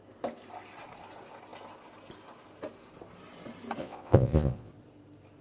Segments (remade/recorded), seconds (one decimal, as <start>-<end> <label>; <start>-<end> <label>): 0.0-3.8 recorded; 3.8-4.7 remade; 4.7-5.4 recorded